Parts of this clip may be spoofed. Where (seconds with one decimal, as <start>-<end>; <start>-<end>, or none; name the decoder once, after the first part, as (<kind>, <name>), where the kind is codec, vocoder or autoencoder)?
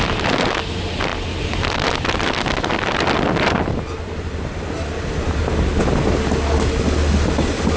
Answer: none